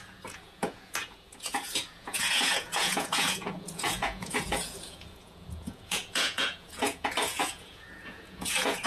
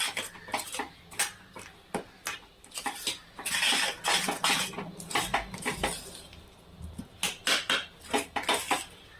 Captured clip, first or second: second